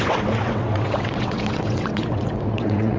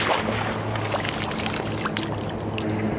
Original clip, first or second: second